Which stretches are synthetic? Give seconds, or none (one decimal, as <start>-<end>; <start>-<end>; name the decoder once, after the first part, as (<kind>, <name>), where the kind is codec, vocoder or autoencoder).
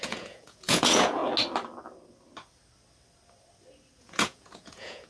0.0-1.2 (vocoder, Vocos); 4.0-5.1